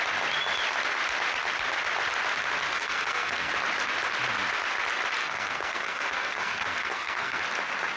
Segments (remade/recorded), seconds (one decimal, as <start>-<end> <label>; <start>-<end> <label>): 0.0-2.7 recorded; 2.7-3.5 remade; 3.5-5.2 recorded; 5.2-7.4 remade; 7.4-8.0 recorded